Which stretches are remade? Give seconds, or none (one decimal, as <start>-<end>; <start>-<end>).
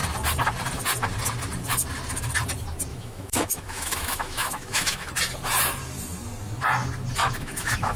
2.9-5.1; 7.2-8.0